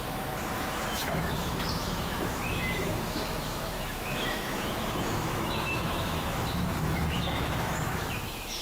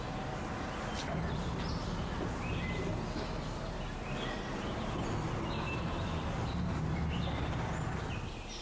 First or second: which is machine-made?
first